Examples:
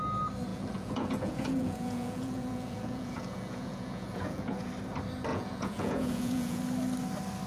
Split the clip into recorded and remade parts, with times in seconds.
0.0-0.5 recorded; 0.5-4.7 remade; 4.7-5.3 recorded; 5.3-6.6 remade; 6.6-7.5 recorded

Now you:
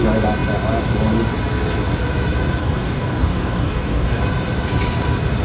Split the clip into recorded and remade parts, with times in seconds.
0.0-2.6 recorded; 2.6-4.2 remade; 4.2-5.4 recorded